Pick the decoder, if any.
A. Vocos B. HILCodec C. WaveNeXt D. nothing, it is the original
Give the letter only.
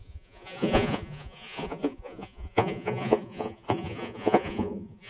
A